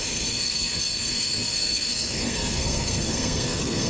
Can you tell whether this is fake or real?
fake